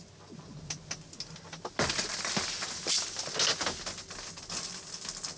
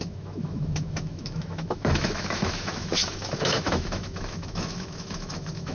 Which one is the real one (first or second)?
first